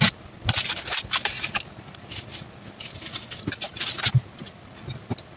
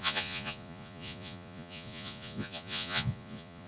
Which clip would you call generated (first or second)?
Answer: second